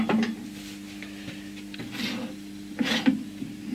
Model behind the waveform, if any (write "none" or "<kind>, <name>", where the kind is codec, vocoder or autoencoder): none